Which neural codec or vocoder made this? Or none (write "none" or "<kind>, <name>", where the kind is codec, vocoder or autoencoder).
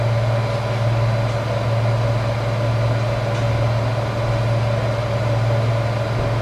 none